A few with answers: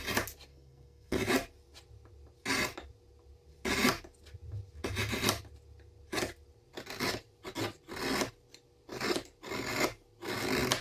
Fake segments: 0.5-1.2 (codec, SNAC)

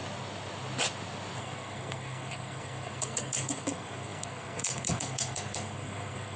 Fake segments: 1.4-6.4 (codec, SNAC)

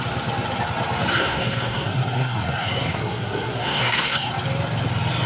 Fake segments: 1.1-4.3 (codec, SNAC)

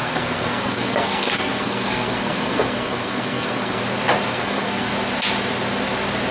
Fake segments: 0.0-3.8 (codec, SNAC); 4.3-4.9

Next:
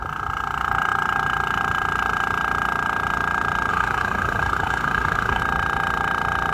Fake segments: 3.7-5.4 (codec, SNAC)

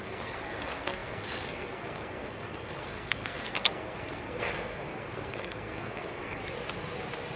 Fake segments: 0.0-6.4 (codec, SNAC)